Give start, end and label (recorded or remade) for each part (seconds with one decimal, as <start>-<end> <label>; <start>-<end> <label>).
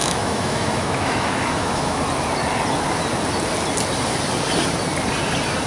0.0-2.0 remade; 2.0-5.7 recorded